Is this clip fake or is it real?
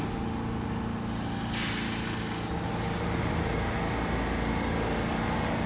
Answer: real